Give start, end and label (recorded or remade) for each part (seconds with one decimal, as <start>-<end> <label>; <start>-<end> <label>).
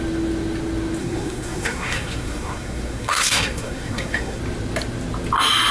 0.0-1.0 recorded; 1.0-4.4 remade; 4.4-5.7 recorded